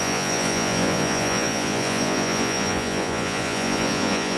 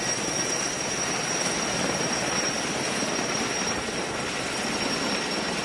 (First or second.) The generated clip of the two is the first